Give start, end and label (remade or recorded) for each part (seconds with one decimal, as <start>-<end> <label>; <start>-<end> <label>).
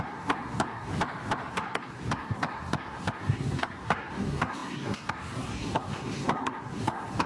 0.0-0.9 remade; 0.9-1.5 recorded; 1.5-7.3 remade